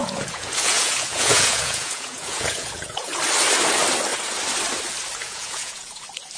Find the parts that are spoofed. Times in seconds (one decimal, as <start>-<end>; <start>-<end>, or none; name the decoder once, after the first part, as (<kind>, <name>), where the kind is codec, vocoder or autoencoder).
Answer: 0.0-3.2 (vocoder, Vocos); 5.2-6.0